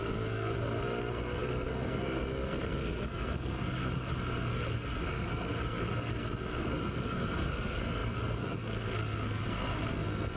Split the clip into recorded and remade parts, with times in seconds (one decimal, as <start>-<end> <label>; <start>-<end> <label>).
0.0-10.4 remade